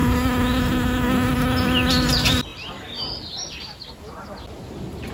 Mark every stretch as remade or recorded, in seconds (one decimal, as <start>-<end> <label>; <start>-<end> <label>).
0.0-5.1 recorded